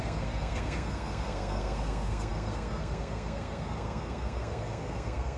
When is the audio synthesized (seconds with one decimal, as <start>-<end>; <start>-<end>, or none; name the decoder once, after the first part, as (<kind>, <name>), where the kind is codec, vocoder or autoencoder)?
0.0-5.4 (codec, SNAC)